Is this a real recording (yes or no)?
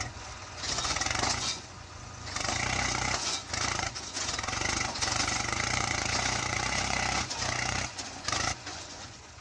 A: no